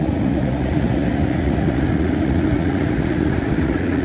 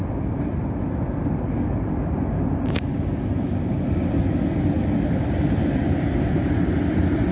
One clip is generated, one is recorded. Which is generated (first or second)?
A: first